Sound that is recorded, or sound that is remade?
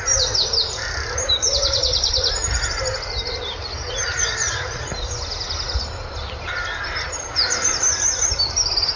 recorded